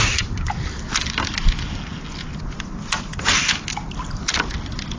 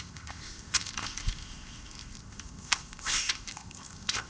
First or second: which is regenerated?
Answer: second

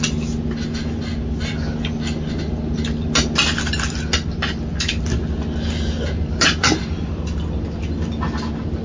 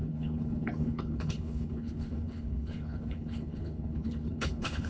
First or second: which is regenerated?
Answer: second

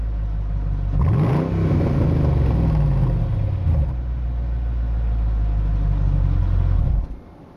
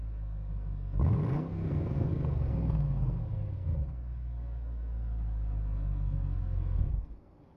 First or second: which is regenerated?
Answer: second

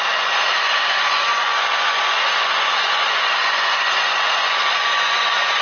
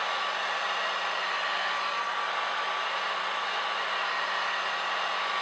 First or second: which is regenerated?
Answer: first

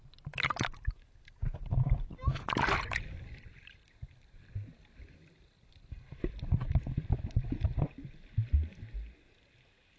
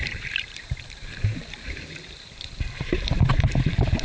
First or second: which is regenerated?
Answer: second